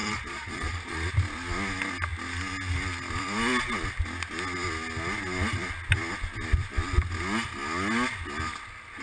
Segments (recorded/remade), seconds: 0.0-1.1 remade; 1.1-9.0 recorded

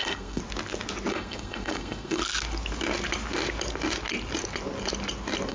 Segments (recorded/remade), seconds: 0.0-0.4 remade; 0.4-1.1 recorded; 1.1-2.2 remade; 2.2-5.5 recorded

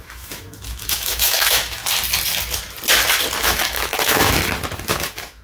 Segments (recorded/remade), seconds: 0.0-1.8 remade; 1.8-3.4 recorded; 3.4-4.4 remade; 4.4-4.9 recorded; 4.9-5.4 remade

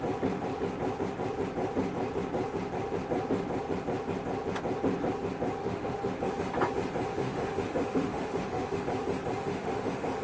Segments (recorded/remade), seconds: 0.0-5.6 recorded; 5.6-6.3 remade; 6.3-7.1 recorded; 7.1-8.8 remade; 8.8-9.4 recorded; 9.4-10.2 remade

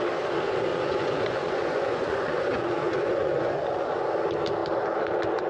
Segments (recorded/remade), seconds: 0.0-0.7 recorded; 0.7-4.0 remade; 4.0-5.5 recorded

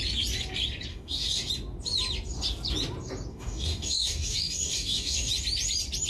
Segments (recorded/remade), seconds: 0.0-0.9 recorded; 0.9-1.5 remade; 1.5-3.3 recorded; 3.3-5.3 remade; 5.3-6.1 recorded

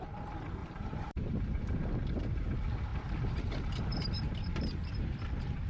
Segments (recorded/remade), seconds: 0.0-0.6 recorded; 0.6-1.3 remade; 1.3-5.7 recorded

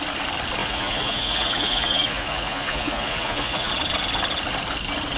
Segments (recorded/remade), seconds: 0.0-0.6 recorded; 0.6-3.7 remade; 3.7-5.2 recorded